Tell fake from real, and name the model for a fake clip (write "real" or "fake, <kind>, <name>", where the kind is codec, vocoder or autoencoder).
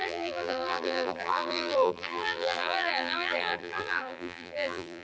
fake, vocoder, BigVGAN v2